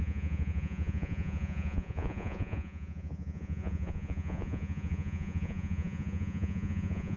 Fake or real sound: fake